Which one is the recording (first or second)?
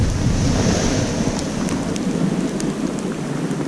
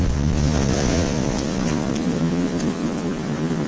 first